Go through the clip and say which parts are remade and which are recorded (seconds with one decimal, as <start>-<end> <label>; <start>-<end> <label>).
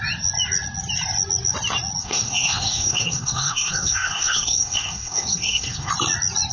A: 0.0-2.0 recorded; 2.0-5.9 remade; 5.9-6.5 recorded